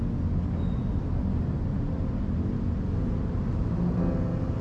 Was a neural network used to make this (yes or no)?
no